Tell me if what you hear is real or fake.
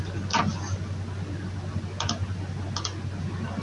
real